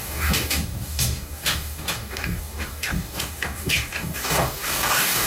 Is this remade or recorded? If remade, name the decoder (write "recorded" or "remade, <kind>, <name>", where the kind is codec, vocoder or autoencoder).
remade, codec, DAC